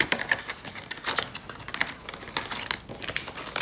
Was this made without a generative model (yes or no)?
yes